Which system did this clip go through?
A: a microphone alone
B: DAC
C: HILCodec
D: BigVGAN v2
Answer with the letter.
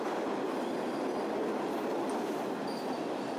A